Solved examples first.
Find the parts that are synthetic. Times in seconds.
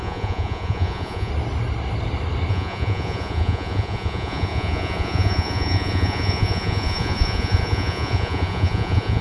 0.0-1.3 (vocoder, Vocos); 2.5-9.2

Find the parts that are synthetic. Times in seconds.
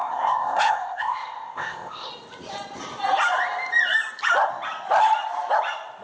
0.0-2.1 (codec, ZipCodec)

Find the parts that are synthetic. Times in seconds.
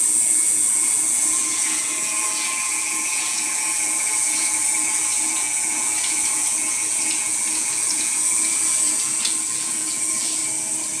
0.0-10.4 (vocoder, Vocos)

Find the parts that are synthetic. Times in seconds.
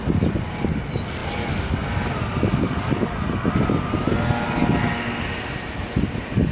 none